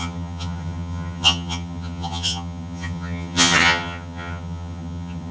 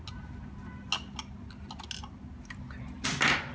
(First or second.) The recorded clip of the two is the second